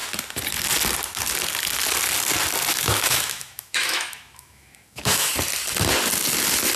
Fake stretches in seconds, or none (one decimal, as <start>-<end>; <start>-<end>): 2.7-5.3